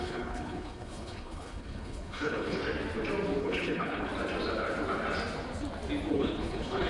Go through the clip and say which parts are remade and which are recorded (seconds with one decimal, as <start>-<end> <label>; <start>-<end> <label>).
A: 0.0-2.6 remade; 2.6-3.4 recorded; 3.4-4.1 remade; 4.1-6.1 recorded; 6.1-6.9 remade